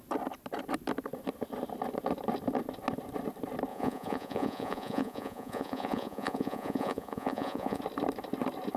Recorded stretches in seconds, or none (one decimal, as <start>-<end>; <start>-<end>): 0.0-3.7; 7.8-8.8